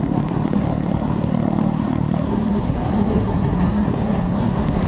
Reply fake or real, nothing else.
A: fake